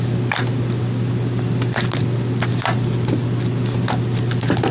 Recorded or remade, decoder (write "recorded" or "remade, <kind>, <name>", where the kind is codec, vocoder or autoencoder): recorded